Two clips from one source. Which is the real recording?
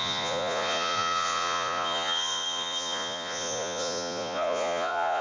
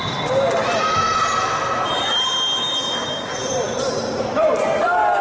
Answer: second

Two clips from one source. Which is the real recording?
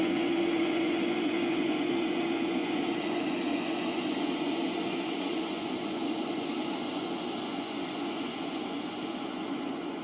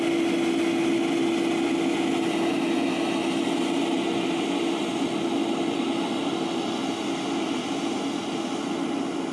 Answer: second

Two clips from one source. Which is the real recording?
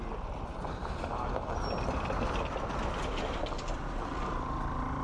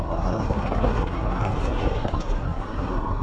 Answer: first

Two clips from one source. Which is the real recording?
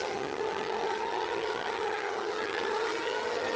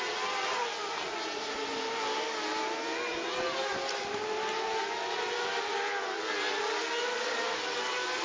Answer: second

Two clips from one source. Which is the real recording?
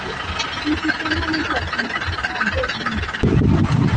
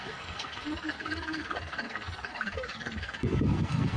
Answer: first